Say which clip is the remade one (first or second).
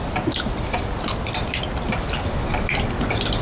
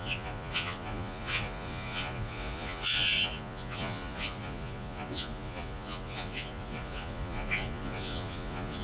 second